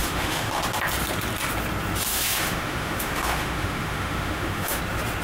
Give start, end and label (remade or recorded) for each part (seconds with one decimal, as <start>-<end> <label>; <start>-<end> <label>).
0.0-0.6 remade; 0.6-2.1 recorded; 2.1-4.8 remade; 4.8-5.2 recorded